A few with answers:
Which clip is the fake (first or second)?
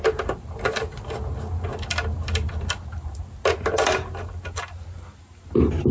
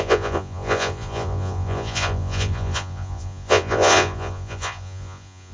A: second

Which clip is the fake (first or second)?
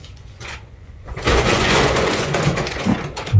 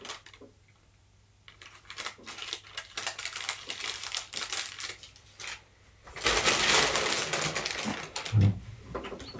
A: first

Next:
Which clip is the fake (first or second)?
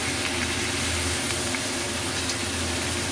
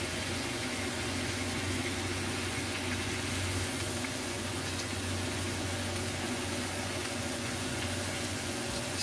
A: second